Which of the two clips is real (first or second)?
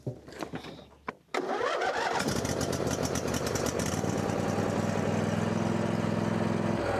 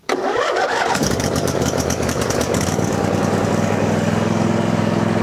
first